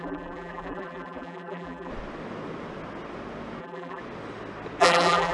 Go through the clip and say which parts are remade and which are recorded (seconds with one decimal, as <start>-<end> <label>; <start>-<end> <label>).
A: 0.0-1.9 remade; 1.9-3.6 recorded; 3.6-4.0 remade; 4.0-4.8 recorded; 4.8-5.3 remade